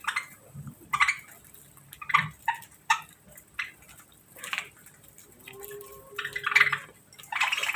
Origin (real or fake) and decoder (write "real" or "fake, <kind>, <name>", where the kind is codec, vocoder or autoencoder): real